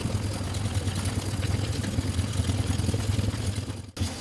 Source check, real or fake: real